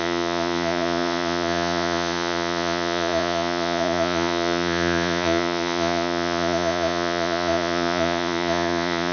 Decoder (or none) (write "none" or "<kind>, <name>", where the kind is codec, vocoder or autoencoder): vocoder, Vocos